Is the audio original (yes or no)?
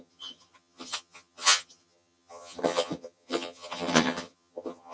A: no